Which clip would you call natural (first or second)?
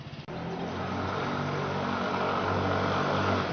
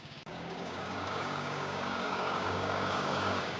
first